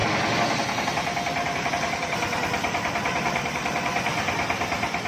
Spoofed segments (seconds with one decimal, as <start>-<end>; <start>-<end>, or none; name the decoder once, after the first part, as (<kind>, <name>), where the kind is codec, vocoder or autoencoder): 1.7-4.1 (vocoder, BigVGAN v2)

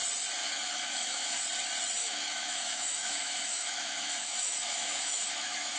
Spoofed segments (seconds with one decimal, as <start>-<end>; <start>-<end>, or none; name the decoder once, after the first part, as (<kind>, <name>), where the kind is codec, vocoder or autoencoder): 0.4-1.4 (autoencoder, DAC-VAE); 2.0-5.8

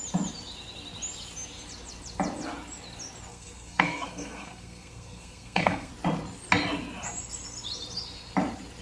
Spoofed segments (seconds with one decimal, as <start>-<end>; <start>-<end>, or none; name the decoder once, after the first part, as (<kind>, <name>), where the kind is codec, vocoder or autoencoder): 3.3-5.9 (codec, SNAC)

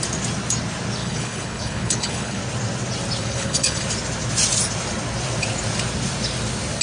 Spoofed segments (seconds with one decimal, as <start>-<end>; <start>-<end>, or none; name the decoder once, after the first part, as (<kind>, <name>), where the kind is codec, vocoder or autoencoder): 1.0-2.4 (codec, HILCodec); 3.2-3.8

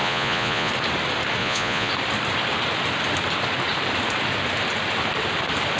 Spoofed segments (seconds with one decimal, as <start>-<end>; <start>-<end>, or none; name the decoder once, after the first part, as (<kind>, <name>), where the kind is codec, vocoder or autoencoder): 0.0-0.7 (vocoder, Vocos); 1.4-1.9